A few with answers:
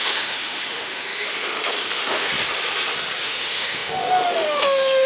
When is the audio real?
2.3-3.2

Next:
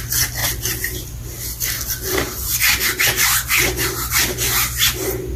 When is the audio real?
0.0-5.4

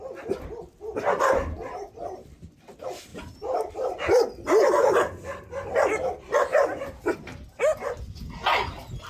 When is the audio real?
0.0-9.1